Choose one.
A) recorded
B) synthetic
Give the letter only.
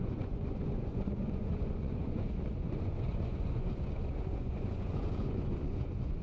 B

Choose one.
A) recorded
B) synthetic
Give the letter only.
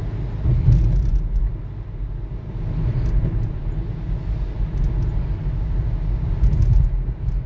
A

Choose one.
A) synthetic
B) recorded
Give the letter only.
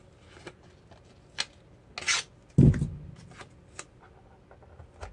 B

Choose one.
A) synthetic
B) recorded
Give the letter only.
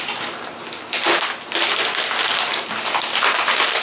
B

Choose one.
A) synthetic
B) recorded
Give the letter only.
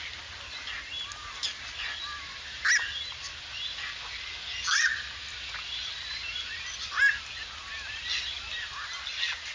B